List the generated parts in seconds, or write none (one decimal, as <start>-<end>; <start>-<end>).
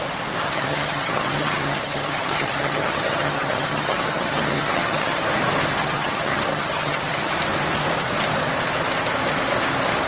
0.4-5.2; 5.8-7.3